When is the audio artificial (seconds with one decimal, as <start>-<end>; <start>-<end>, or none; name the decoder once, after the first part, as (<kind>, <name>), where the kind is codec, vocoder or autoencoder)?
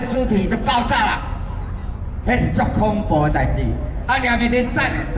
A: 0.0-1.2 (vocoder, Vocos); 1.8-2.5; 3.7-4.4